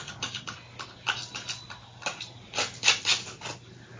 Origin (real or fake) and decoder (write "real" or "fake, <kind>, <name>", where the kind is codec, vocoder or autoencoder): real